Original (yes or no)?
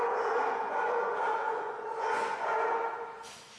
no